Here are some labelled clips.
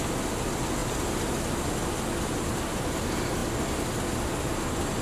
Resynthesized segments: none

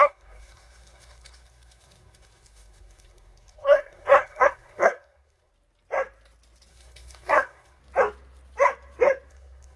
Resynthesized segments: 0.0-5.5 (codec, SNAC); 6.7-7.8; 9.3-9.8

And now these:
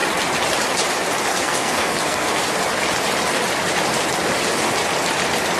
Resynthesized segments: 1.3-2.4 (codec, SNAC)

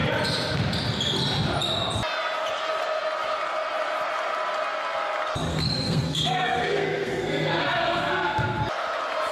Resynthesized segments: 5.5-8.6 (codec, SNAC)

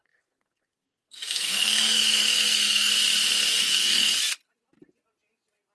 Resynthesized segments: 0.0-2.9 (codec, SNAC); 3.5-4.1